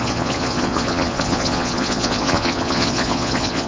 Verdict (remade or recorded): remade